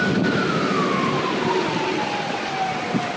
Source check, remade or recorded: recorded